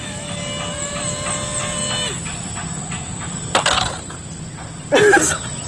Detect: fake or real real